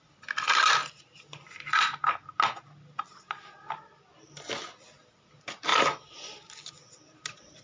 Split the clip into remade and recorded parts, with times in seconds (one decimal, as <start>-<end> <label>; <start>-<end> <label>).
0.0-7.6 recorded